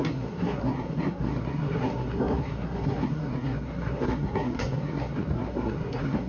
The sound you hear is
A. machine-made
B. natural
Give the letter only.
A